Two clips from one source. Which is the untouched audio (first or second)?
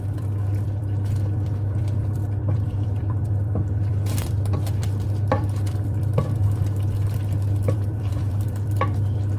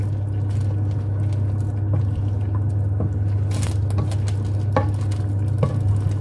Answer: second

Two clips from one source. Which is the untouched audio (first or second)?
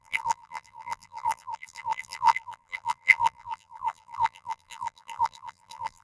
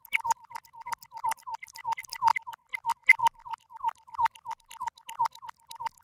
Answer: second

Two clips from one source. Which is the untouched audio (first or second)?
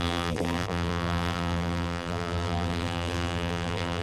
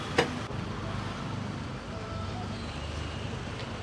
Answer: second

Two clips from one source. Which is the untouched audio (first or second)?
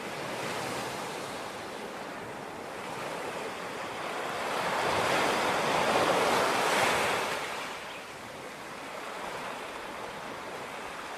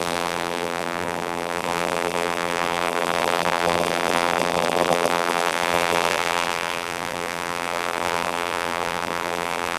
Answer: first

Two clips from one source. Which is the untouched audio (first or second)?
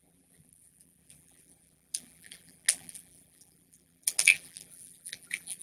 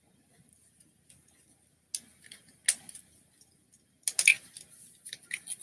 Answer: second